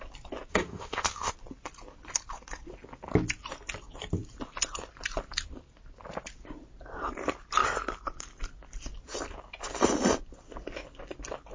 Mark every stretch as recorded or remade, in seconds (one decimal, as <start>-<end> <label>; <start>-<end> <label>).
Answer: 0.0-0.5 recorded; 0.5-1.3 remade; 1.3-11.5 recorded